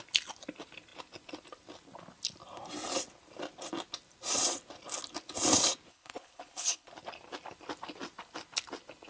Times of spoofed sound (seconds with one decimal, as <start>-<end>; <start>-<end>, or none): 5.9-6.9